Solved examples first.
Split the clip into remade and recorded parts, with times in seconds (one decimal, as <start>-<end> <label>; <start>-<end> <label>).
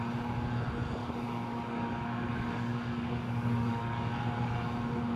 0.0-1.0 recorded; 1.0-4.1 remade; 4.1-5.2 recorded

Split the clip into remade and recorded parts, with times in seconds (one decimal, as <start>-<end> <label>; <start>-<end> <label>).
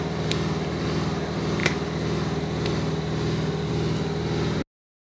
0.0-5.1 recorded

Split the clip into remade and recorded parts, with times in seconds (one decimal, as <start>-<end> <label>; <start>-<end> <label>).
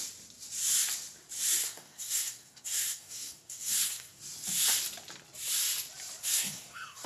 0.0-1.6 recorded; 1.6-4.2 remade; 4.2-6.2 recorded; 6.2-7.1 remade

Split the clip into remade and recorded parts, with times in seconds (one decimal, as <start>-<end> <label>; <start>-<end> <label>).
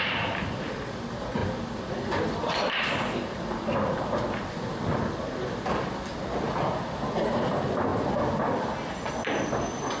0.0-10.0 recorded